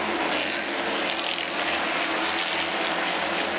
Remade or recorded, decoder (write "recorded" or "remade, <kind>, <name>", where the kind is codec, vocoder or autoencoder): recorded